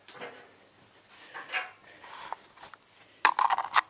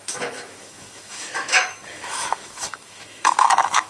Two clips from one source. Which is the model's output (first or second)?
second